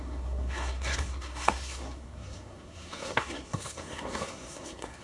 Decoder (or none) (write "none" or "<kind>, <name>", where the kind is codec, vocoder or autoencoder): codec, SNAC